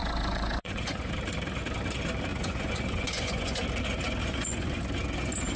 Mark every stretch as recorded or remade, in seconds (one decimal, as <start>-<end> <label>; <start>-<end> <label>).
0.0-1.1 remade; 1.1-2.3 recorded; 2.3-3.6 remade; 3.6-4.2 recorded; 4.2-4.8 remade; 4.8-5.6 recorded